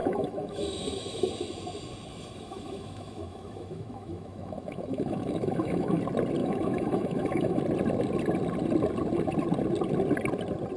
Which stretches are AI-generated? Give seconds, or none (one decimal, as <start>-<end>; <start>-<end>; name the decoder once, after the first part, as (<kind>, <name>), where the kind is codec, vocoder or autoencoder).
0.0-1.3 (autoencoder, DAC-VAE); 2.1-6.0; 6.4-7.6